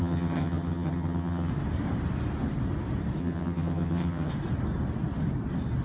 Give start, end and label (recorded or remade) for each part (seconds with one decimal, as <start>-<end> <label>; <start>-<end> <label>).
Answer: 0.0-1.5 remade; 1.5-3.2 recorded; 3.2-4.3 remade; 4.3-5.8 recorded